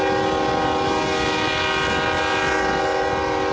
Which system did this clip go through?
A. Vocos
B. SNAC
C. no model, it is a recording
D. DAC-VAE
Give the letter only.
C